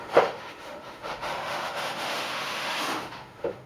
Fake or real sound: fake